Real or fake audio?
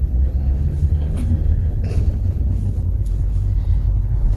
fake